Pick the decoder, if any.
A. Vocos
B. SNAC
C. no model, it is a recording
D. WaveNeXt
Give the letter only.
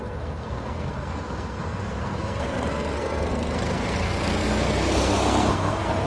B